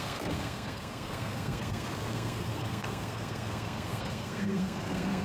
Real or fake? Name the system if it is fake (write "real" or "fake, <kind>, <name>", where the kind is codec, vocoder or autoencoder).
fake, codec, SNAC